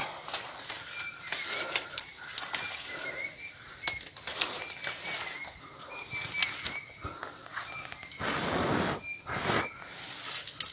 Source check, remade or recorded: recorded